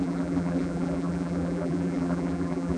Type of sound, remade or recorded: remade